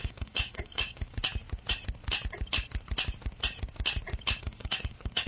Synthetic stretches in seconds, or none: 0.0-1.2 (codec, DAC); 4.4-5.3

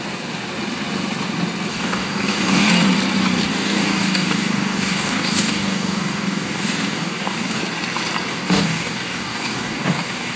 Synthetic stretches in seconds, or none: 1.7-2.7 (codec, DAC); 3.5-7.6; 8.3-10.4

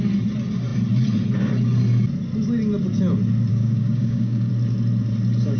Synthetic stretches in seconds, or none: 3.5-4.5 (codec, DAC)